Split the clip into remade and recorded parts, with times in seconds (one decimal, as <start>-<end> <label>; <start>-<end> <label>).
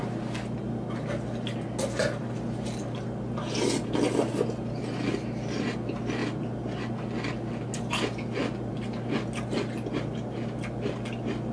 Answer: 0.0-11.5 recorded